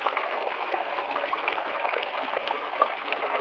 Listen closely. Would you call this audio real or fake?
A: fake